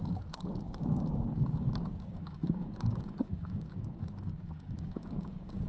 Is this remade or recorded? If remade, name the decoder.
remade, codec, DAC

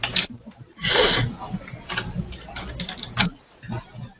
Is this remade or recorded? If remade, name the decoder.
recorded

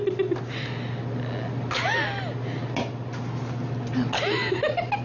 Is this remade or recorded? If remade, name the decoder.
recorded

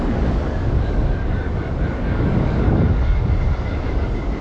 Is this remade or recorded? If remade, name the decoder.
remade, codec, DAC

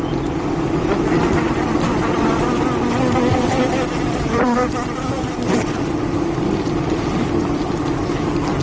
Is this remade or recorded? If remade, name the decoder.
recorded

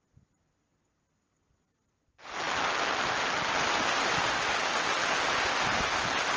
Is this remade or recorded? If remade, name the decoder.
recorded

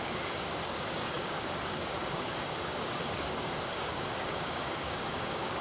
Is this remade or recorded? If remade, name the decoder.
remade, codec, DAC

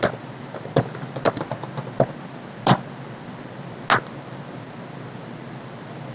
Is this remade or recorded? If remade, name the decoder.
recorded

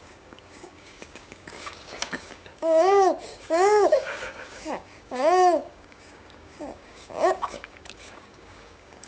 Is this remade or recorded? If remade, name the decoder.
remade, codec, DAC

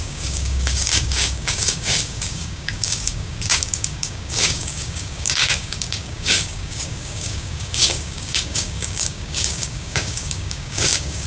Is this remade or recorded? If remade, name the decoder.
remade, codec, DAC